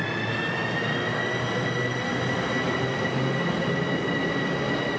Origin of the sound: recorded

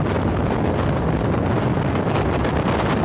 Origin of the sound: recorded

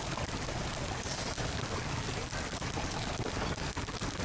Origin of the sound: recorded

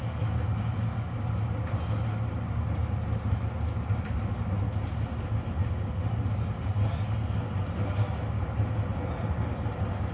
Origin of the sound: recorded